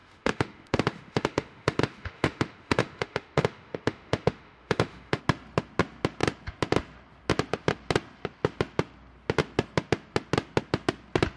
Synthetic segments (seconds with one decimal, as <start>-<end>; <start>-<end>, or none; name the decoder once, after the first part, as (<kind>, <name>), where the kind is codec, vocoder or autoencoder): 0.0-5.2 (autoencoder, DAC-VAE)